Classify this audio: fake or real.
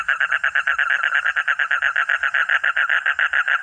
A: fake